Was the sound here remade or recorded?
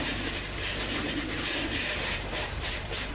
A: remade